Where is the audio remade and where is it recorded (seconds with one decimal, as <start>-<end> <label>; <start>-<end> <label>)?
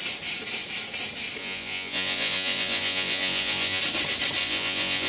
0.0-1.4 recorded; 1.4-3.8 remade; 3.8-4.4 recorded; 4.4-5.1 remade